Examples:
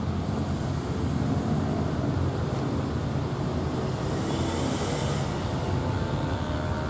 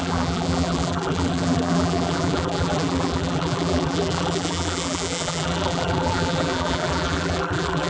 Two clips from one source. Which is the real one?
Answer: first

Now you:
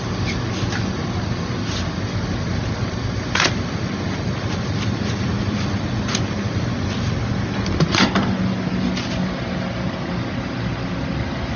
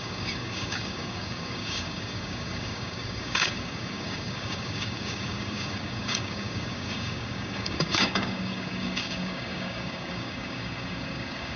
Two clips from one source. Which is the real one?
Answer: first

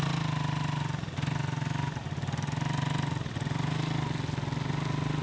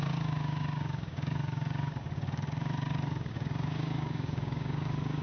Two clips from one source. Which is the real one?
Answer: first